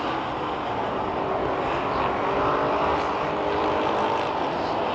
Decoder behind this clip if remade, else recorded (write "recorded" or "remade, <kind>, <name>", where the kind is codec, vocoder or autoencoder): recorded